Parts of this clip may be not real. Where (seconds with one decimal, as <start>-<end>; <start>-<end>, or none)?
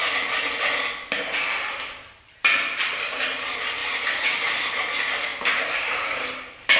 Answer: 3.8-4.6